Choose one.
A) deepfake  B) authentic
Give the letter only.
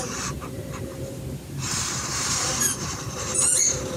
A